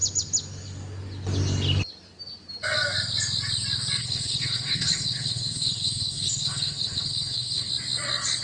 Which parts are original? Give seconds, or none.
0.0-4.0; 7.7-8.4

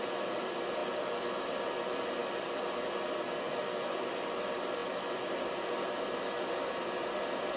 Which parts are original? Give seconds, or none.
0.0-7.6

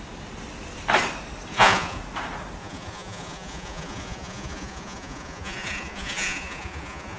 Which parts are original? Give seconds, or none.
0.0-1.5; 2.0-2.6

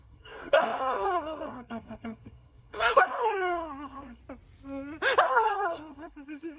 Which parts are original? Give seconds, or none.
4.2-5.2